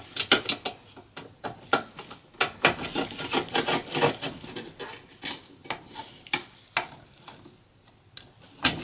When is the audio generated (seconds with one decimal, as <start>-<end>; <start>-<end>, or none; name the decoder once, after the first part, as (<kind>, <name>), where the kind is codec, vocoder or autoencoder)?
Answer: none